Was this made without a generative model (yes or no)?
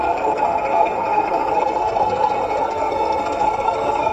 no